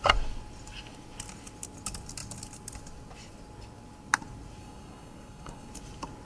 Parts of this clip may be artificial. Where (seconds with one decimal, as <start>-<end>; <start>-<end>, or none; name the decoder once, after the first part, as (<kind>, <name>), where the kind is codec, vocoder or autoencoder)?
4.6-5.7 (codec, DAC)